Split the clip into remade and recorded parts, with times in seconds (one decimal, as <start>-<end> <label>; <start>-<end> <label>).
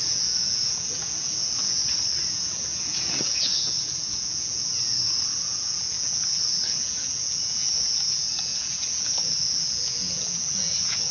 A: 0.0-1.8 remade; 1.8-2.3 recorded; 2.3-11.1 remade